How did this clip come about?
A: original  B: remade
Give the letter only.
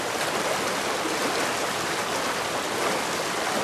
A